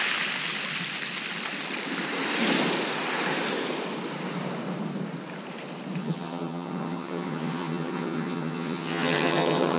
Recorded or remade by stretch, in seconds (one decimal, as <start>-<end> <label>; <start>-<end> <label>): 0.0-6.0 recorded; 6.0-9.8 remade